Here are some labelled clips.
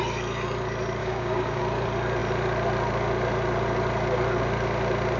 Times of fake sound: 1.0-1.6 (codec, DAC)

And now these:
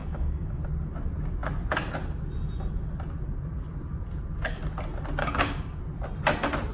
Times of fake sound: 0.0-0.6 (codec, DAC); 5.2-5.8

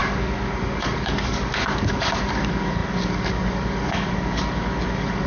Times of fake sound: 0.0-5.3 (codec, DAC)